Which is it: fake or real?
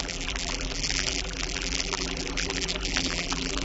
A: fake